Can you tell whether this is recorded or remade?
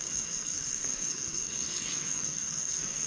remade